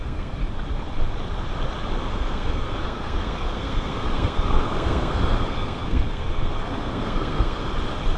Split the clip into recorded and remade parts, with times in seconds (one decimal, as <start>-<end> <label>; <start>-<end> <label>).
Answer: 0.0-0.4 remade; 0.4-2.1 recorded; 2.1-7.6 remade; 7.6-8.2 recorded